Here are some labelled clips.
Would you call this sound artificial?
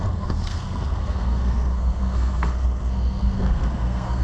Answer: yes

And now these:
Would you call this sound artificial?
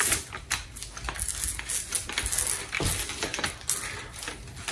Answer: no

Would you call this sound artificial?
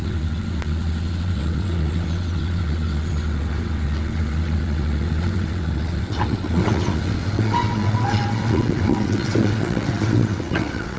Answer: yes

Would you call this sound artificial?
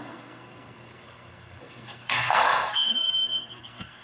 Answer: yes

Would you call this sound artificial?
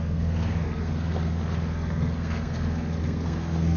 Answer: yes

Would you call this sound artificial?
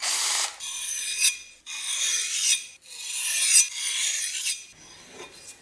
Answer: no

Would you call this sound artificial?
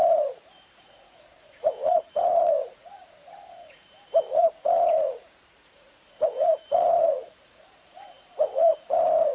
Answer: yes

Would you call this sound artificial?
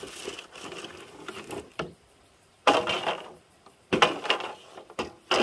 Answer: no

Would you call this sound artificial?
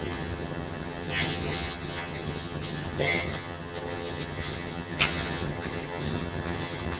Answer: yes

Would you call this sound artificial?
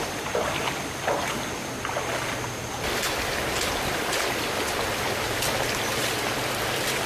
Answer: no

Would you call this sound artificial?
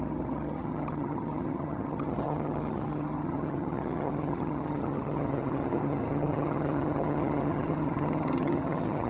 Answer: yes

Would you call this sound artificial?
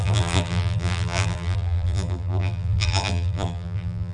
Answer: yes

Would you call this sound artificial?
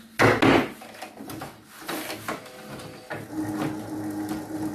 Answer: no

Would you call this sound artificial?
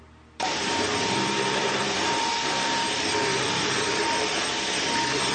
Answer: yes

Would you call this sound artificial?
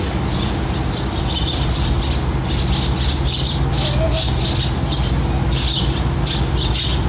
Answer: no